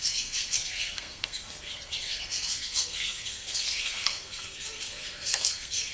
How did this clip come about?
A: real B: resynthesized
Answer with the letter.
B